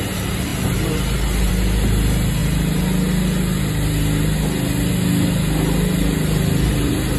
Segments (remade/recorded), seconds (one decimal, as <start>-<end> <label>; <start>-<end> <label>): 0.0-7.2 recorded